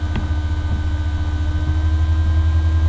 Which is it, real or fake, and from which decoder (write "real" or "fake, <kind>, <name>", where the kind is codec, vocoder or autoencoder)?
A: real